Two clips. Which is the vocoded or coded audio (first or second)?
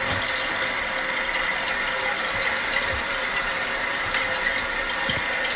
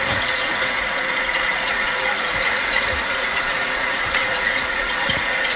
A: second